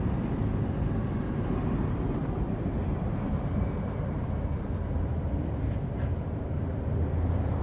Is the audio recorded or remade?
remade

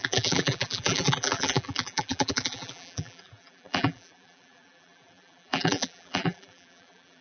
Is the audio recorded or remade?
remade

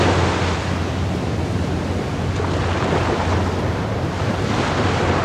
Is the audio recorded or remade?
recorded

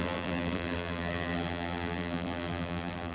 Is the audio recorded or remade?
remade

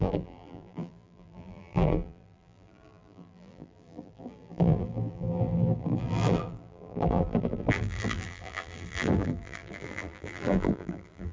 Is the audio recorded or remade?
remade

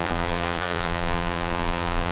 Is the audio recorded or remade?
remade